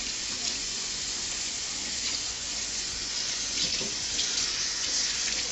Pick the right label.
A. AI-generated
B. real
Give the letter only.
A